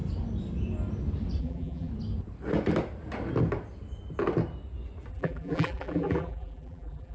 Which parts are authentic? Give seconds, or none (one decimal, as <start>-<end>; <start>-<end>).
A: 0.0-1.4; 1.9-5.1